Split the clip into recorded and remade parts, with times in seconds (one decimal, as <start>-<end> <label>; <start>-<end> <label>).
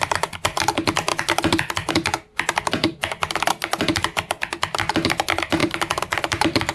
0.0-1.1 recorded; 1.1-1.9 remade; 1.9-5.6 recorded; 5.6-6.2 remade; 6.2-6.7 recorded